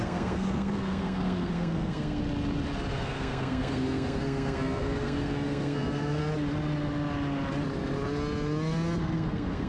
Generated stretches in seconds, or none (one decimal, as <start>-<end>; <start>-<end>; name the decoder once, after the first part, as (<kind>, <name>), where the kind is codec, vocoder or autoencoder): 0.0-2.2 (codec, SNAC); 3.0-6.2; 9.0-9.7